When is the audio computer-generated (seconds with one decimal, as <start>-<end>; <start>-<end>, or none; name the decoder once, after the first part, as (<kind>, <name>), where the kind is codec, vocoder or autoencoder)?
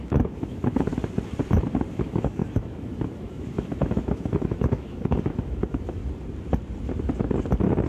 0.0-0.9 (autoencoder, DAC-VAE); 1.9-6.0